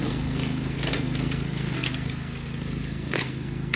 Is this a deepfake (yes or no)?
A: yes